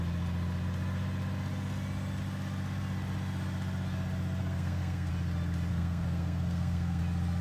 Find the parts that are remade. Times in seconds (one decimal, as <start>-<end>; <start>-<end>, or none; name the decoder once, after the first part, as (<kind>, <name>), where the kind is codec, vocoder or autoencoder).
4.4-5.1 (codec, SNAC); 5.7-7.0